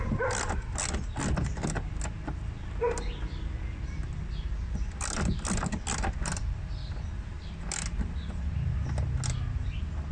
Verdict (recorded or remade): recorded